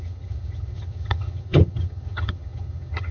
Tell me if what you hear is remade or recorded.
remade